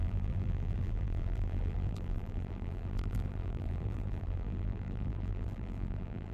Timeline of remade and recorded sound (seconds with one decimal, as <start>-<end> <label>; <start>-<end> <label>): 0.0-6.3 remade